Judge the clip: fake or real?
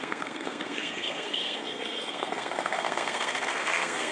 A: fake